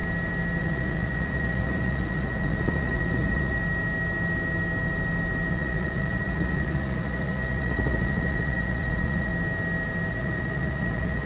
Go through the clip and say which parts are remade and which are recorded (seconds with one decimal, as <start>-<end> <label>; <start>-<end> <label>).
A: 0.0-0.6 recorded; 0.6-3.6 remade; 3.6-5.5 recorded; 5.5-9.3 remade; 9.3-10.1 recorded; 10.1-11.3 remade

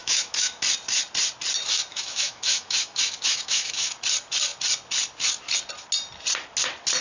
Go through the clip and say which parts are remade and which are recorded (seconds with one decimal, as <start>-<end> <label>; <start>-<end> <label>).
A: 0.0-0.6 remade; 0.6-1.9 recorded; 1.9-3.9 remade; 3.9-7.0 recorded

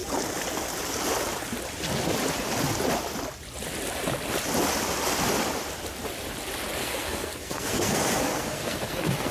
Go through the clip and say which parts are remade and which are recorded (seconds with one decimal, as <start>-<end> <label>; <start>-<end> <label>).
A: 0.0-6.8 recorded; 6.8-9.3 remade

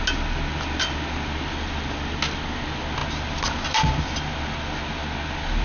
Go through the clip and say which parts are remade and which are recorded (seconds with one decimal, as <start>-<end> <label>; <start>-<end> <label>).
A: 0.0-5.6 recorded